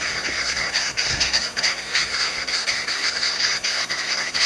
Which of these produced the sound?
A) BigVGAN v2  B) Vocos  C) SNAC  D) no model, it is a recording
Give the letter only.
C